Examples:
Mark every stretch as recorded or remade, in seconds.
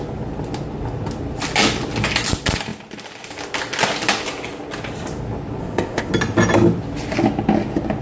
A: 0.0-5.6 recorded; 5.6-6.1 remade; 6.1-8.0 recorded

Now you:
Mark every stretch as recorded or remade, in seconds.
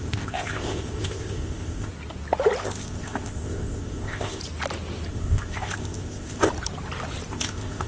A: 0.0-1.9 remade; 1.9-2.6 recorded; 2.6-4.4 remade; 4.4-5.1 recorded; 5.1-6.5 remade; 6.5-7.3 recorded; 7.3-7.9 remade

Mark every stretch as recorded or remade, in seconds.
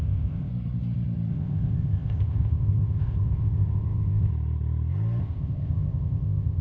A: 0.0-0.5 remade; 0.5-1.3 recorded; 1.3-4.3 remade; 4.3-5.2 recorded; 5.2-6.6 remade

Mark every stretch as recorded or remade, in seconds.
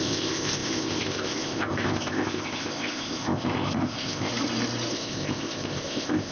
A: 0.0-4.3 remade; 4.3-4.9 recorded; 4.9-6.3 remade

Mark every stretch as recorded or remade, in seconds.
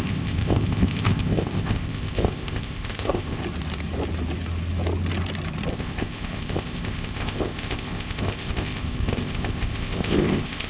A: 0.0-3.4 remade; 3.4-5.7 recorded; 5.7-10.7 remade